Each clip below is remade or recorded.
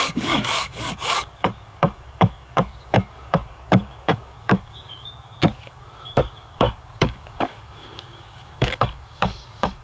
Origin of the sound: remade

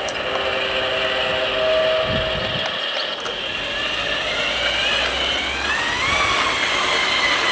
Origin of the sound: recorded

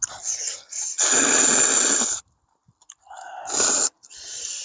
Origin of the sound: recorded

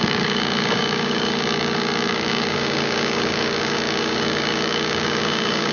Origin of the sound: remade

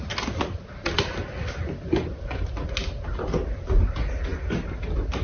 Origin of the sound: recorded